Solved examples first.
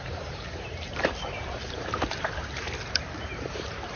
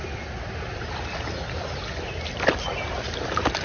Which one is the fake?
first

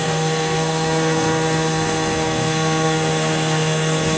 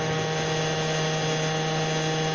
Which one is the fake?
first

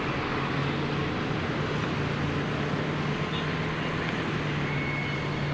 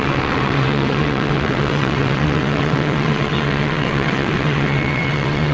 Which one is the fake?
second